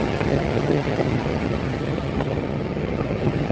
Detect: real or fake fake